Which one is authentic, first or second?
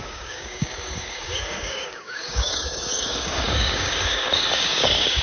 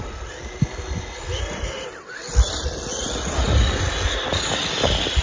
second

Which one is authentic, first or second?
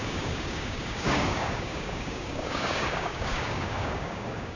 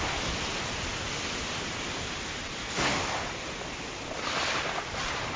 second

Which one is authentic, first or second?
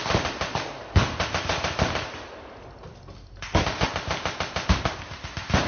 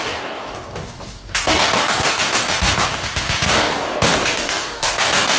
first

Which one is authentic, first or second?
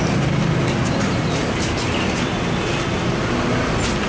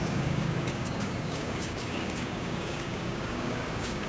first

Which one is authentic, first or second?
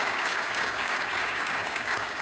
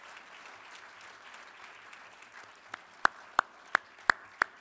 second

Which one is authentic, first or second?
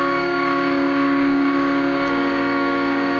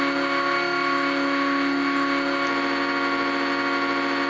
second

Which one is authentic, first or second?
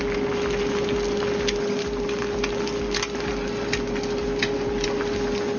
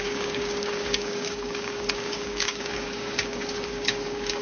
first